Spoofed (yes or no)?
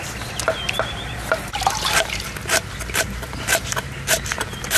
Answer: no